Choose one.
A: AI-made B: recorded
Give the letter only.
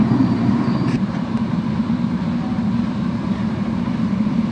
A